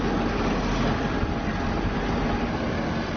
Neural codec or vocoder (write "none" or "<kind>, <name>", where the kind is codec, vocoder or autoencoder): none